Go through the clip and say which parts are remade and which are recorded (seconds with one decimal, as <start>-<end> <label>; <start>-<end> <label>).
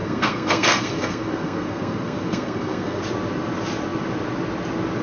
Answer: 0.0-3.0 remade; 3.0-5.0 recorded